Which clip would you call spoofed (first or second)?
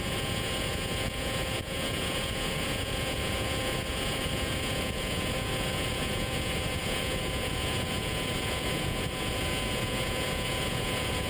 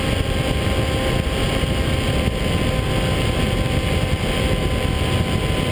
first